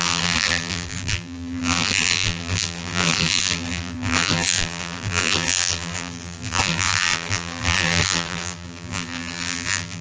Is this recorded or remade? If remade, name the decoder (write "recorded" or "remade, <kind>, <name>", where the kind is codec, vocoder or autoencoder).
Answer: remade, vocoder, BigVGAN v2